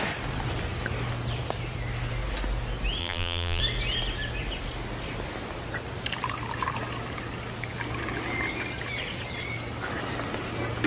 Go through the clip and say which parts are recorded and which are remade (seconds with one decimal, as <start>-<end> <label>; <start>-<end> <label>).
0.0-3.0 recorded; 3.0-3.6 remade; 3.6-10.9 recorded